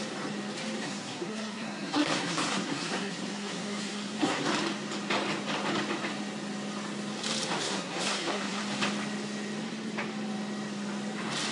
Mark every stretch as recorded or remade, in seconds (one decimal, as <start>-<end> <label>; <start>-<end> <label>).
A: 0.0-0.8 recorded; 0.8-4.5 remade; 4.5-7.6 recorded; 7.6-8.6 remade; 8.6-11.5 recorded